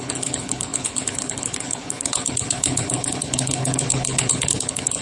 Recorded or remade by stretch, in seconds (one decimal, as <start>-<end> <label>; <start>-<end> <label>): 0.0-5.0 remade